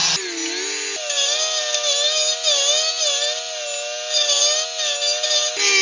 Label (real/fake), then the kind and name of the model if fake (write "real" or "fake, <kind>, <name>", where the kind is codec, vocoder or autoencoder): real